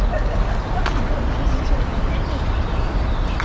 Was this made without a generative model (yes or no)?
yes